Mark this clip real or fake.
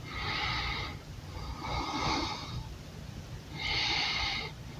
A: real